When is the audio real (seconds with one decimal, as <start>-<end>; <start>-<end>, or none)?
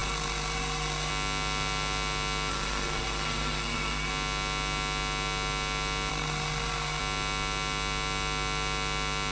1.1-2.5; 4.1-6.1; 7.0-9.3